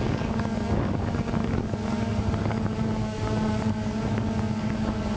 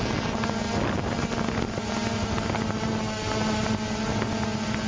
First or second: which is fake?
first